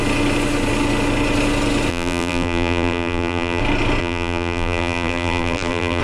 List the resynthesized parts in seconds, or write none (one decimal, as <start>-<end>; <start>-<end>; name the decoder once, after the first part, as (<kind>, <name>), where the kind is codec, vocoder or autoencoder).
1.9-3.6 (vocoder, BigVGAN v2); 4.0-6.0